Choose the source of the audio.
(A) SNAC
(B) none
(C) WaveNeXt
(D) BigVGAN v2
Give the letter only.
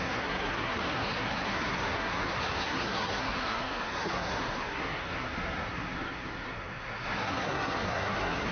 A